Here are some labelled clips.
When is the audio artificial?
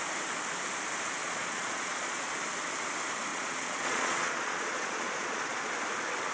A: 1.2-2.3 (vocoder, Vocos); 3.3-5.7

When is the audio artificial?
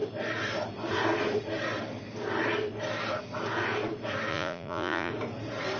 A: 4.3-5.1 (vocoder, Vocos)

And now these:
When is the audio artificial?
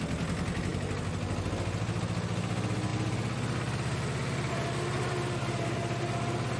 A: none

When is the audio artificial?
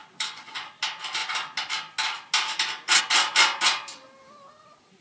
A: 0.0-0.7 (vocoder, Vocos)